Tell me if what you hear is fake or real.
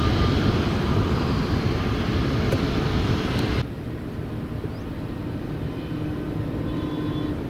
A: fake